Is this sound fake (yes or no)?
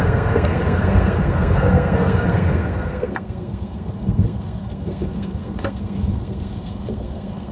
yes